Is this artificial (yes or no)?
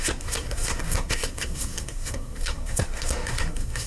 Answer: yes